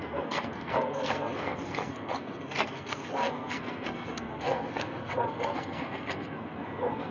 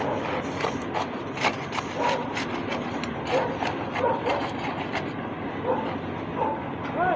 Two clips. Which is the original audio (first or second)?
second